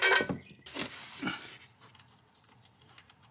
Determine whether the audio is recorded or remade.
recorded